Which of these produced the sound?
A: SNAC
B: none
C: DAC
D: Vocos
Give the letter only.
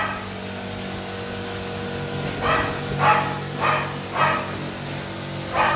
B